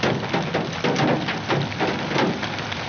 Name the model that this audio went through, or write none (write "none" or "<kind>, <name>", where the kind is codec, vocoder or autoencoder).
none